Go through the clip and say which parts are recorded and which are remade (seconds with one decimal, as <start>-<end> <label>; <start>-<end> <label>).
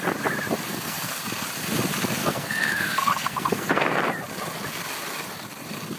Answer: 0.0-0.7 recorded; 0.7-1.2 remade; 1.2-2.2 recorded; 2.2-3.9 remade; 3.9-6.0 recorded